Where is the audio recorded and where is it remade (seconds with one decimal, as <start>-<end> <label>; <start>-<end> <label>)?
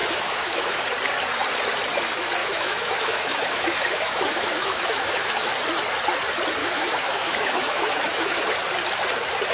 0.0-0.8 remade; 0.8-2.4 recorded; 2.4-5.5 remade; 5.5-6.6 recorded; 6.6-8.4 remade; 8.4-9.5 recorded